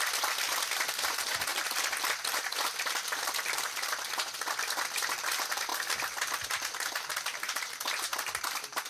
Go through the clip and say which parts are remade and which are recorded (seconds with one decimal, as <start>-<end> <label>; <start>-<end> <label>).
0.0-8.9 remade